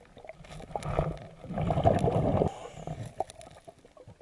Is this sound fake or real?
real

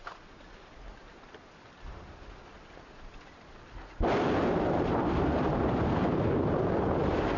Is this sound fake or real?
real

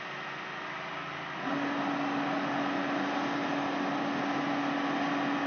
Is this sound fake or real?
real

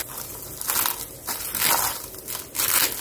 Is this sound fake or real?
real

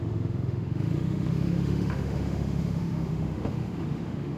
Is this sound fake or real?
fake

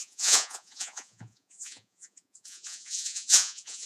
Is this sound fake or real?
fake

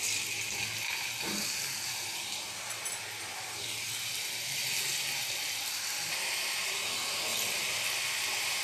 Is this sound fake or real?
real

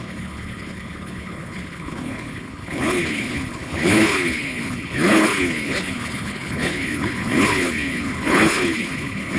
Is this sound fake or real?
fake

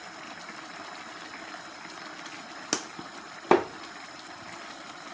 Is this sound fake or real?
real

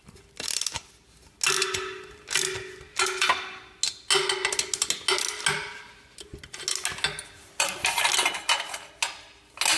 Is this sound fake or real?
real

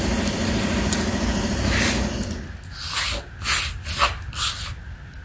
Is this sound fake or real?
real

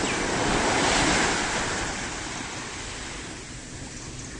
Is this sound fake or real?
real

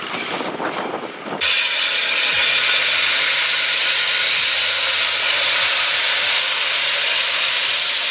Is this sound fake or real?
fake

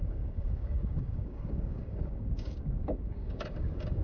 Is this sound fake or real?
fake